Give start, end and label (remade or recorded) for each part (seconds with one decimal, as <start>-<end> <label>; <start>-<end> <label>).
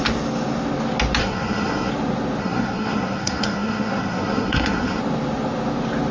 0.0-1.2 recorded; 1.2-1.9 remade; 1.9-2.4 recorded; 2.4-5.0 remade; 5.0-6.1 recorded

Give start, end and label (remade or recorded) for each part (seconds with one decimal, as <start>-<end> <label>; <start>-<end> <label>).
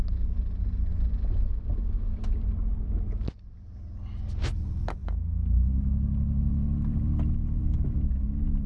0.0-8.7 recorded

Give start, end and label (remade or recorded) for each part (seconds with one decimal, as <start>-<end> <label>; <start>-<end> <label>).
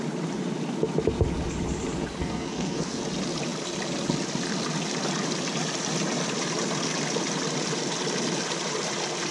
0.0-2.2 recorded; 2.2-3.0 remade; 3.0-9.3 recorded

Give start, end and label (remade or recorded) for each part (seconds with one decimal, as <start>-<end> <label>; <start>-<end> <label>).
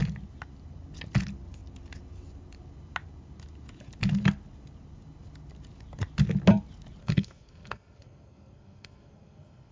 0.0-7.0 recorded; 7.0-9.7 remade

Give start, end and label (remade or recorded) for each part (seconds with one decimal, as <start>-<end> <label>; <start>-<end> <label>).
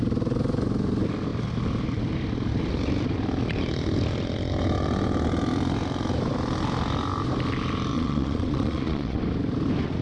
0.0-7.9 recorded; 7.9-9.2 remade; 9.2-10.0 recorded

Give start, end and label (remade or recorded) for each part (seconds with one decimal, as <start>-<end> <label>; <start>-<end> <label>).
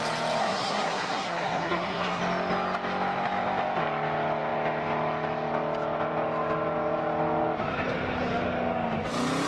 0.0-0.4 recorded; 0.4-2.2 remade; 2.2-9.5 recorded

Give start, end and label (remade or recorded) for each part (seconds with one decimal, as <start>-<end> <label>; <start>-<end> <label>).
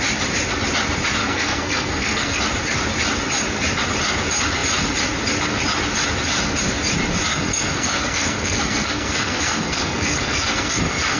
0.0-1.2 recorded; 1.2-2.4 remade; 2.4-7.3 recorded; 7.3-11.2 remade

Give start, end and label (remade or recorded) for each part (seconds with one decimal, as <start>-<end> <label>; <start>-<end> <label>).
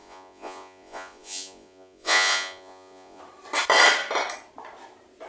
0.0-3.2 remade; 3.2-5.3 recorded